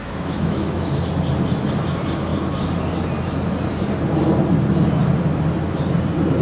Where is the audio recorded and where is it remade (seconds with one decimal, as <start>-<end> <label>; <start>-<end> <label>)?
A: 0.0-1.0 remade; 1.0-6.4 recorded